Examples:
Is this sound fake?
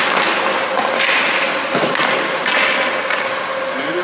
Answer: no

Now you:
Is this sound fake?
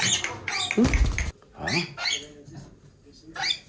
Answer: no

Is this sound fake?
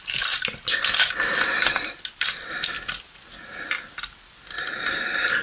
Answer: no